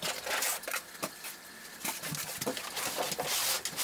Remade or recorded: recorded